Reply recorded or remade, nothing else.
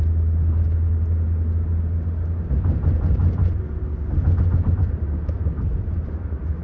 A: recorded